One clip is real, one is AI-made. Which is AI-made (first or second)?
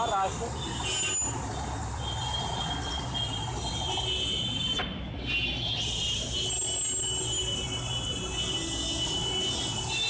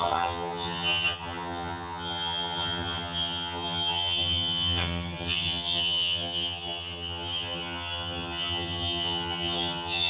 second